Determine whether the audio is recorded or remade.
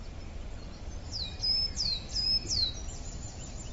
recorded